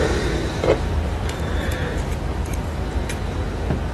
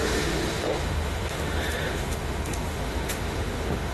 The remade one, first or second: second